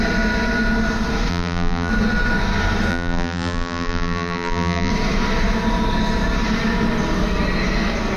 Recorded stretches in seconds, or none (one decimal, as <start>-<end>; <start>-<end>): 0.0-1.3; 1.9-2.9; 4.9-8.2